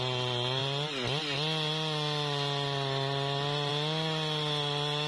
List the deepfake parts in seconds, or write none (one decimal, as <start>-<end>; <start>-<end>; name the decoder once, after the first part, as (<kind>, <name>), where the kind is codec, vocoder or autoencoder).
none